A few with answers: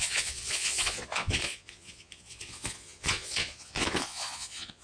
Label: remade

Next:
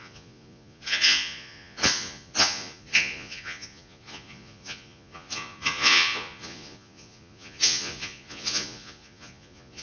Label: remade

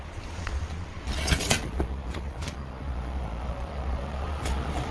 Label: remade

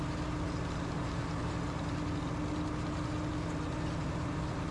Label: recorded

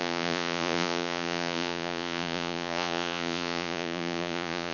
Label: remade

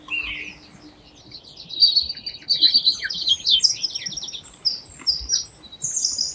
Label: recorded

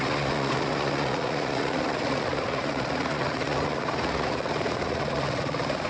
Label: remade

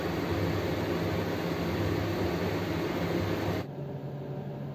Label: recorded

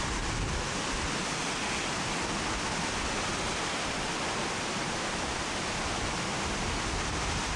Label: recorded